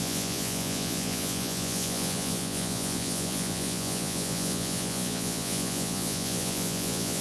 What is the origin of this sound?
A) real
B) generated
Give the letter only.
B